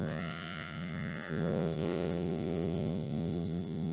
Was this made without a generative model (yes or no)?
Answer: no